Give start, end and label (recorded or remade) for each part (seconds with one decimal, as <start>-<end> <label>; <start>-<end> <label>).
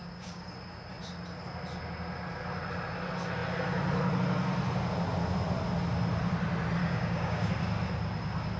0.0-0.5 remade; 0.5-6.8 recorded; 6.8-7.5 remade; 7.5-8.6 recorded